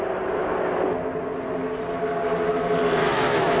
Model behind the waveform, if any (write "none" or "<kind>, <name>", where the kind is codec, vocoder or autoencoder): none